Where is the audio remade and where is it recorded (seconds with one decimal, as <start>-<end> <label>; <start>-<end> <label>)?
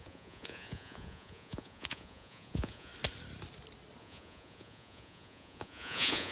0.0-2.9 remade; 2.9-4.0 recorded; 4.0-6.3 remade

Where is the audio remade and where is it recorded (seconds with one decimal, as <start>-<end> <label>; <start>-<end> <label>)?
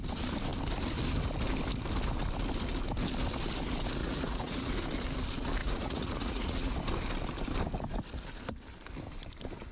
0.0-4.0 recorded; 4.0-4.7 remade; 4.7-5.6 recorded; 5.6-6.7 remade; 6.7-9.7 recorded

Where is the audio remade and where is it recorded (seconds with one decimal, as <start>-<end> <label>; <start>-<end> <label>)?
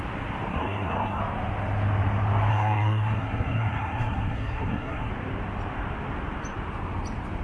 0.0-0.5 recorded; 0.5-1.2 remade; 1.2-2.5 recorded; 2.5-5.1 remade; 5.1-7.4 recorded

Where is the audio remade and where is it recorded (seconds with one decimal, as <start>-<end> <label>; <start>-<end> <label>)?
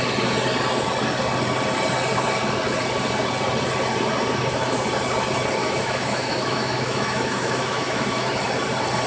0.0-5.6 recorded; 5.6-8.3 remade; 8.3-9.1 recorded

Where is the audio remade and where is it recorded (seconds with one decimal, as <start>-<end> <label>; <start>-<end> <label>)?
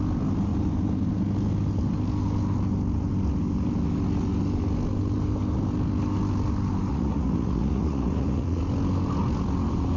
0.0-6.9 recorded; 6.9-8.6 remade; 8.6-10.0 recorded